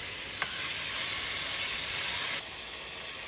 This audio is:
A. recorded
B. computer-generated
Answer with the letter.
A